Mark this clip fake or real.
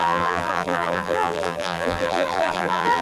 fake